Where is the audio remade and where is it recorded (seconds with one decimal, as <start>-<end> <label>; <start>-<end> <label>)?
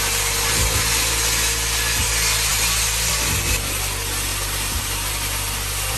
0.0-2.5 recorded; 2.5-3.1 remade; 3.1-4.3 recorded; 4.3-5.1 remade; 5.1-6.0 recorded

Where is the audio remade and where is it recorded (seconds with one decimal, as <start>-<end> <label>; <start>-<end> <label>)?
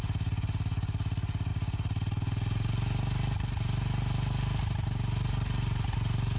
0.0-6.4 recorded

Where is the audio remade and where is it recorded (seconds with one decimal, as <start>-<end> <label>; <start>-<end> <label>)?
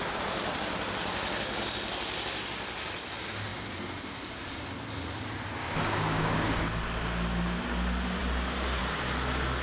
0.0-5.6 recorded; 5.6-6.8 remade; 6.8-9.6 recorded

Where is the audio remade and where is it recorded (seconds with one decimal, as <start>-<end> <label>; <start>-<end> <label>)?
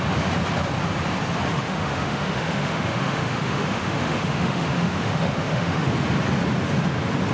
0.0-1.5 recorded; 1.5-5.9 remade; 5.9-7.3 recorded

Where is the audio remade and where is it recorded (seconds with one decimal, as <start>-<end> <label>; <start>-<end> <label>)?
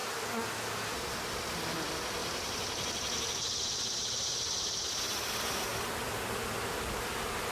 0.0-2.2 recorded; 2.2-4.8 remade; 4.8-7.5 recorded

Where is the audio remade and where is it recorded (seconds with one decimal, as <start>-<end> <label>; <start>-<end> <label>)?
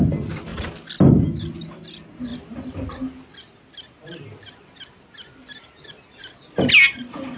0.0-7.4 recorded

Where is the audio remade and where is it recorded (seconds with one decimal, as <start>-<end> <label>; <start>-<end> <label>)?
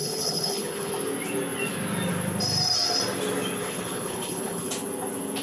0.0-0.9 remade; 0.9-3.6 recorded; 3.6-4.7 remade; 4.7-5.4 recorded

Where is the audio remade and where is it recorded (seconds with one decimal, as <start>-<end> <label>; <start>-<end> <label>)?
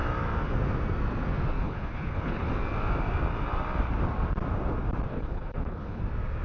0.0-1.6 recorded; 1.6-2.5 remade; 2.5-5.1 recorded; 5.1-6.0 remade; 6.0-6.4 recorded